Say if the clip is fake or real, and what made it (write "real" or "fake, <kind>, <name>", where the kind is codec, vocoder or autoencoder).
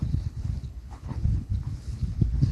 fake, codec, HILCodec